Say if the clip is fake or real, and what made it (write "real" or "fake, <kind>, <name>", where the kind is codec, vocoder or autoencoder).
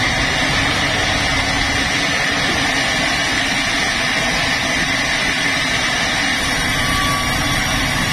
real